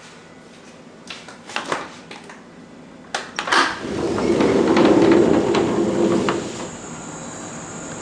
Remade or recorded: recorded